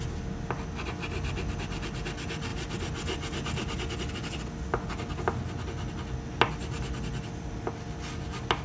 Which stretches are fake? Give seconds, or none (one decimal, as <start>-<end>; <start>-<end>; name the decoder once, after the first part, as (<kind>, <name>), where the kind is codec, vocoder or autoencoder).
none